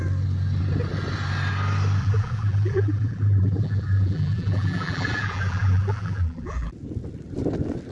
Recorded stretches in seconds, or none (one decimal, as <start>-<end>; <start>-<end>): 0.0-2.0; 6.7-7.9